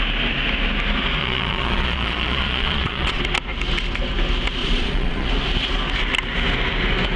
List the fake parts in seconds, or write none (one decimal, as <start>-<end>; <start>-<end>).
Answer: 1.2-3.2; 4.6-5.3